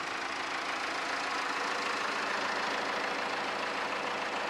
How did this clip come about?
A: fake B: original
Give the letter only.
B